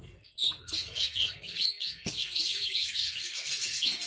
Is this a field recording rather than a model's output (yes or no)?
no